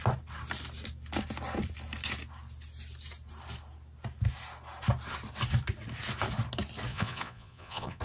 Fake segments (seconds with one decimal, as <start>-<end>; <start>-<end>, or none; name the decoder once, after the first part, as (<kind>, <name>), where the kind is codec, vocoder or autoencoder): 6.9-8.0 (vocoder, Vocos)